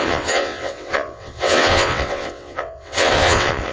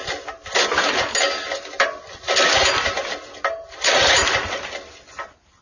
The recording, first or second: second